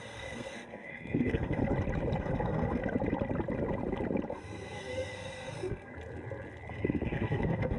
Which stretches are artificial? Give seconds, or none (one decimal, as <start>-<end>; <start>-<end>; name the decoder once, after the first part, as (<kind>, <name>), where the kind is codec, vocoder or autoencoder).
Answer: 0.0-1.6 (codec, SNAC); 2.2-2.8; 4.3-5.9; 6.7-7.8